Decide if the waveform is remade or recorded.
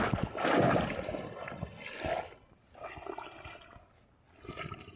recorded